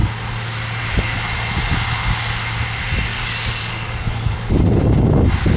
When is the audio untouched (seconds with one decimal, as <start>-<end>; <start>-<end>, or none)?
0.0-3.1; 4.5-5.6